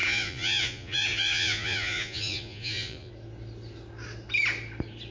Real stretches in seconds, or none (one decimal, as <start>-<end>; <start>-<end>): 3.1-5.1